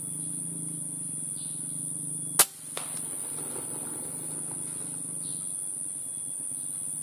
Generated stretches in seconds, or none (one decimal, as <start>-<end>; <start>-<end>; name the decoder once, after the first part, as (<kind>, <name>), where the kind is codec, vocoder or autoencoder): none